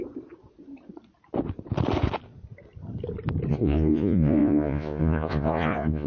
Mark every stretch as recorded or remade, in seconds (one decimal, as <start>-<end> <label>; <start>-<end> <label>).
0.0-3.5 recorded; 3.5-6.1 remade